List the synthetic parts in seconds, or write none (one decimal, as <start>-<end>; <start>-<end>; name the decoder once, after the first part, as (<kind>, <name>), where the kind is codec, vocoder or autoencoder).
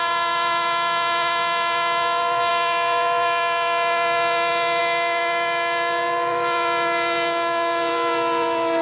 none